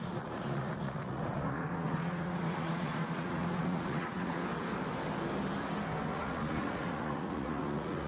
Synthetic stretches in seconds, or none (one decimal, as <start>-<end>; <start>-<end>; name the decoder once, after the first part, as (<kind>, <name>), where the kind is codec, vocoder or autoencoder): 0.0-4.4 (vocoder, Vocos); 6.1-8.1